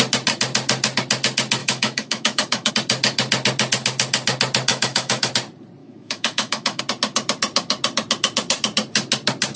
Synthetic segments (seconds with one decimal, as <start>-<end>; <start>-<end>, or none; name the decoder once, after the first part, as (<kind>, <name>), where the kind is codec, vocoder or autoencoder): 1.6-2.7 (autoencoder, DAC-VAE); 4.7-5.3; 5.8-6.8